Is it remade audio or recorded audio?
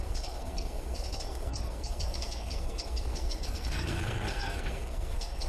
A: remade